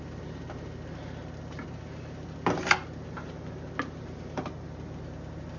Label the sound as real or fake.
real